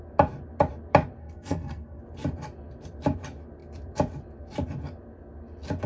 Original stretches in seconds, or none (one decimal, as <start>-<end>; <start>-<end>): 0.0-1.2; 2.0-5.9